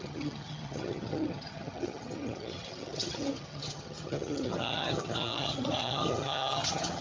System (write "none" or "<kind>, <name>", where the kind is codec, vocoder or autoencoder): vocoder, HiFi-GAN